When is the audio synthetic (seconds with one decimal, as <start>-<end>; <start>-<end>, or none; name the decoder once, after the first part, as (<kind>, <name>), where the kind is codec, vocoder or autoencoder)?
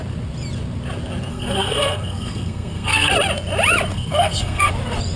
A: 1.3-3.1 (codec, SNAC); 3.9-4.7